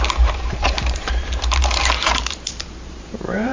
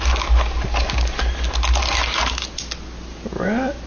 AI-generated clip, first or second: first